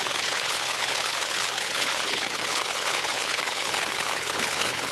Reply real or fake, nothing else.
fake